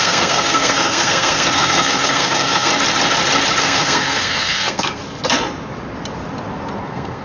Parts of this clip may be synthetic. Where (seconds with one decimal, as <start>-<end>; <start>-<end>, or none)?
0.0-2.7; 3.6-5.0; 6.8-7.2